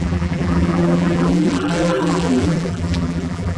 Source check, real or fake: fake